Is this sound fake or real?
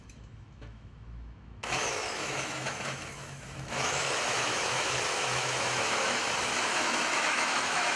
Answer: fake